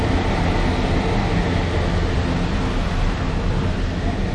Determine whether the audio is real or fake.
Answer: real